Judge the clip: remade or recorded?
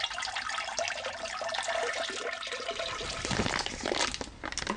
recorded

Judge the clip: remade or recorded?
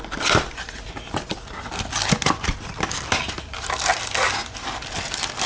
recorded